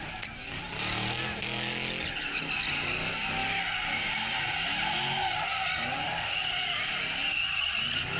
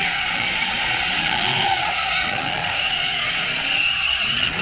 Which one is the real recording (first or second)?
first